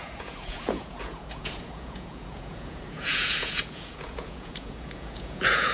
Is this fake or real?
fake